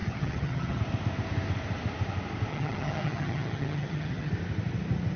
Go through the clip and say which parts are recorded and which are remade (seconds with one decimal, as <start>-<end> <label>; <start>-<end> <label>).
0.0-0.8 remade; 0.8-2.5 recorded; 2.5-4.3 remade; 4.3-5.2 recorded